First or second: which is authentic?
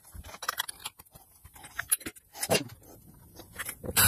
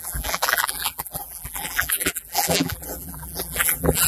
first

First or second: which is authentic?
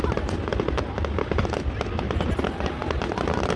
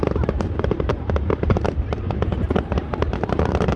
first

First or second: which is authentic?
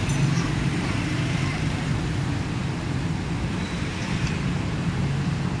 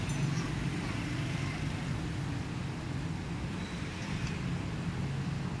second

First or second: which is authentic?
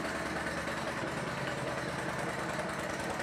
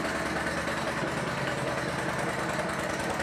second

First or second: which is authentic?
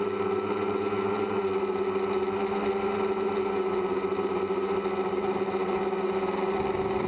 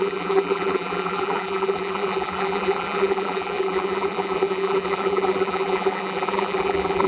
first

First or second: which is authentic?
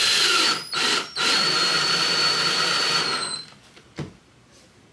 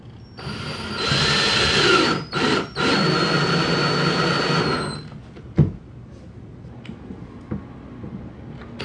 second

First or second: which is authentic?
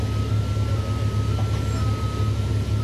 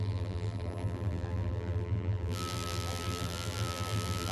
first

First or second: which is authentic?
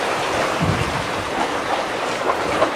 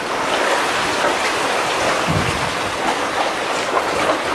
second